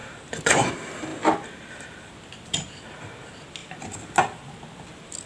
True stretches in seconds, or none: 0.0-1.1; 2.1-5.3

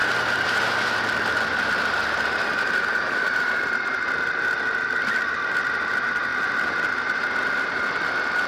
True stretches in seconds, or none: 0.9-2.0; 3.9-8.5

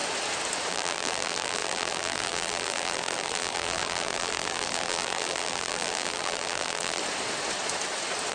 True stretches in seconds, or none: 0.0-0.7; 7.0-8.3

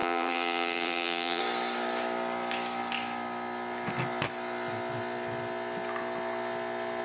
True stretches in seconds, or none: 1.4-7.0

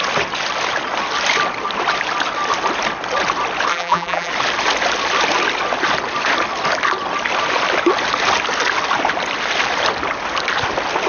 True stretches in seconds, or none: 0.0-3.7; 4.3-11.1

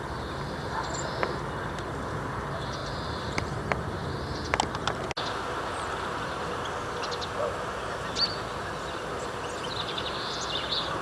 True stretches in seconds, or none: 0.0-2.8; 3.4-11.0

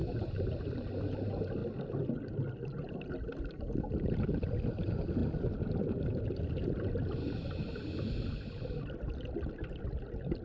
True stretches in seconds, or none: 0.6-10.4

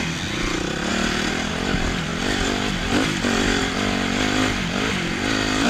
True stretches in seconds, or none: 0.0-5.7